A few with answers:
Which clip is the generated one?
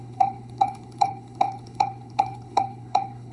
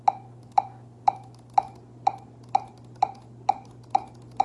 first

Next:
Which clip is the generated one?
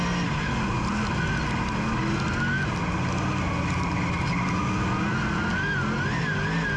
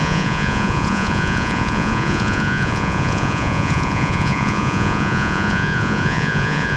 second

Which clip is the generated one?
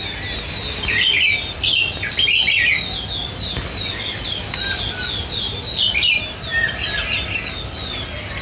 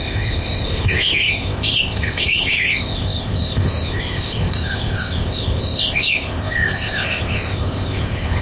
second